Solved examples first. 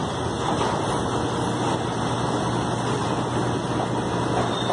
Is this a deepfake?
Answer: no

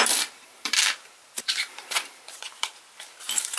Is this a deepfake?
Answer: yes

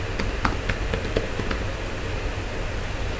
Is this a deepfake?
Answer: no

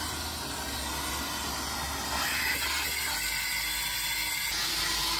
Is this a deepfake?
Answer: no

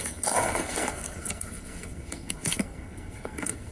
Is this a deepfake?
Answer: yes